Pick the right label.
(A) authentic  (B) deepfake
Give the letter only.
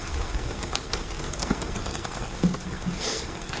B